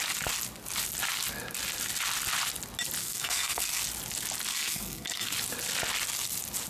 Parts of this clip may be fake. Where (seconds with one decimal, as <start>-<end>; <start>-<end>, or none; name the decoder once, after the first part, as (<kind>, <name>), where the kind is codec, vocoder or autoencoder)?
3.0-3.8 (codec, SNAC); 4.5-5.3